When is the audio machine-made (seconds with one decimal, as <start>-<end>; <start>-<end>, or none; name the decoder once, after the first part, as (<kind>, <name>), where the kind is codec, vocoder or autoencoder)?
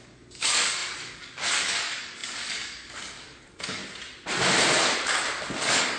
0.0-3.8 (codec, DAC); 5.6-6.0